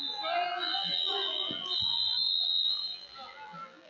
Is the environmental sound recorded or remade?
remade